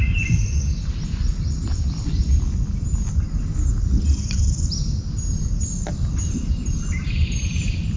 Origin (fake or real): real